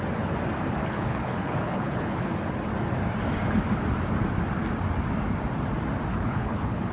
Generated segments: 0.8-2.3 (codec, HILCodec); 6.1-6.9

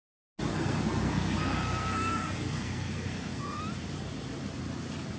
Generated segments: 0.5-3.6 (codec, SNAC)

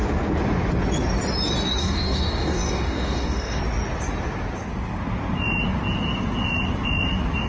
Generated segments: 1.8-3.6 (codec, DAC)